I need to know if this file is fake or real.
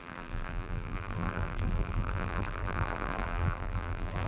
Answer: fake